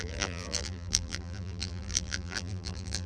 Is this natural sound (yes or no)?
no